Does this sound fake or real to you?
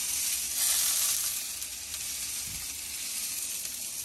real